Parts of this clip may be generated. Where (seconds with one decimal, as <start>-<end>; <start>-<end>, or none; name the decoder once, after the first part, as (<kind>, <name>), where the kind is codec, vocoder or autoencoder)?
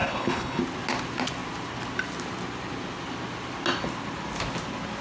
0.0-0.6 (codec, HILCodec)